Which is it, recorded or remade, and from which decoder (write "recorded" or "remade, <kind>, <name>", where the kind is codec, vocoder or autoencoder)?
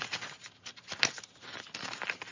recorded